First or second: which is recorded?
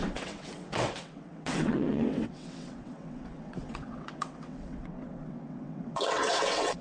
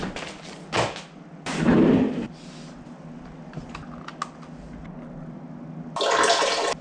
second